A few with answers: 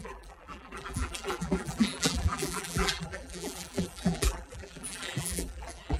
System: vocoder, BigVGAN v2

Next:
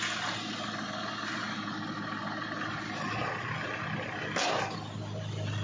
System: none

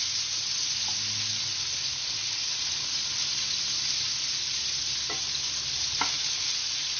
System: none